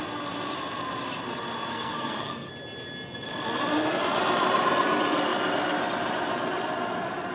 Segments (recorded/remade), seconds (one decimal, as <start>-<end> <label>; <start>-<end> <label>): 0.0-1.7 recorded; 1.7-2.5 remade; 2.5-7.3 recorded